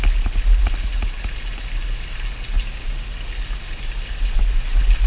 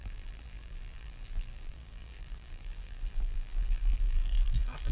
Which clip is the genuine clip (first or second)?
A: first